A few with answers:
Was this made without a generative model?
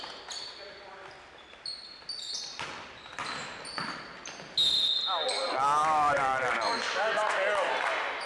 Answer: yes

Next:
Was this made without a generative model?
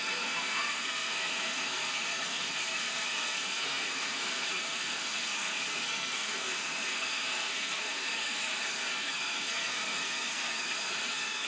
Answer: no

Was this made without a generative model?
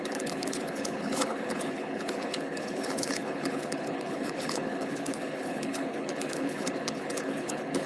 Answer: no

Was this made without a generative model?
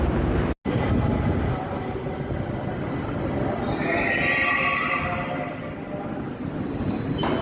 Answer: yes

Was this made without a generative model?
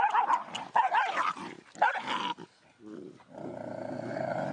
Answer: yes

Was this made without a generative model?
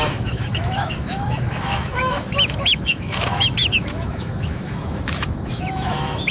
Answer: no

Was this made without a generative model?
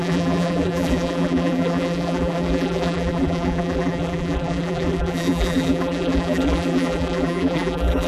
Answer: no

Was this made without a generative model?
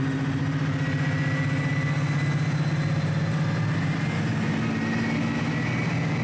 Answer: yes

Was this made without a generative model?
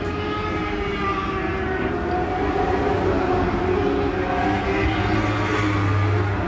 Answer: yes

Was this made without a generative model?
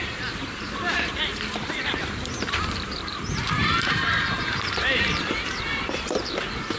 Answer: no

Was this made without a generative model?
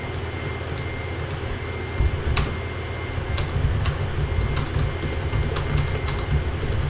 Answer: yes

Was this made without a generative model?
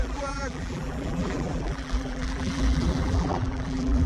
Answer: no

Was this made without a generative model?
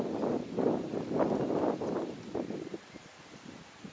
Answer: no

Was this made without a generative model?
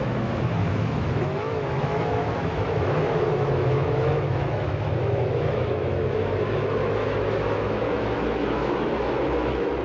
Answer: no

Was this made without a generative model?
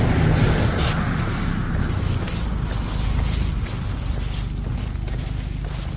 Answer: yes